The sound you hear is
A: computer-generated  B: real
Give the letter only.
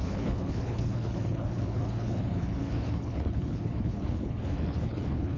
A